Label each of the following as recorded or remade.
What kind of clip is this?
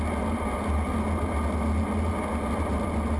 recorded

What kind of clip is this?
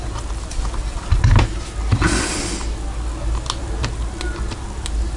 recorded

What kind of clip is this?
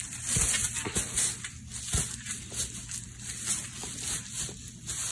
recorded